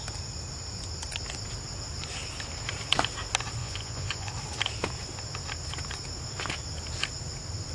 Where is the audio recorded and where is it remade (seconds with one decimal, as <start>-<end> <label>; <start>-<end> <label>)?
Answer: 0.0-3.6 recorded; 3.6-4.3 remade; 4.3-7.7 recorded